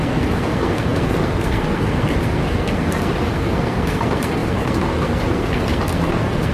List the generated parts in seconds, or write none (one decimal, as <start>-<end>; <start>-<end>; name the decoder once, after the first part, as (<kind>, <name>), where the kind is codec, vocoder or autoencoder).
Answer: 0.0-6.5 (codec, SNAC)